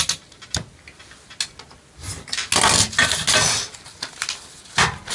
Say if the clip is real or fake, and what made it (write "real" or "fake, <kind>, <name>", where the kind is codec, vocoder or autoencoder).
real